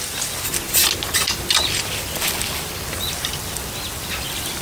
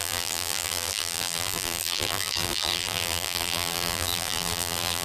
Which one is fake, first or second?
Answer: second